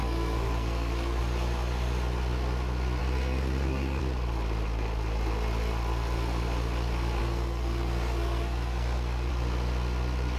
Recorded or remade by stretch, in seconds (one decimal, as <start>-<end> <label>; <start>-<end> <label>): 0.0-1.2 remade; 1.2-3.0 recorded; 3.0-4.0 remade; 4.0-7.2 recorded; 7.2-9.3 remade; 9.3-10.4 recorded